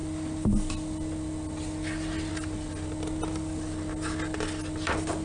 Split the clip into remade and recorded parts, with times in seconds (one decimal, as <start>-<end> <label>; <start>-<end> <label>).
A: 0.0-5.2 recorded